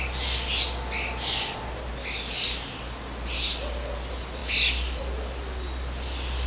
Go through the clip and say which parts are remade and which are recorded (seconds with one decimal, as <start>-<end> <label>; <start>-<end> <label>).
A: 0.0-6.5 recorded